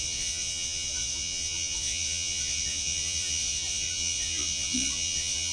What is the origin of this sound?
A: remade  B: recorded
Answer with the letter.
A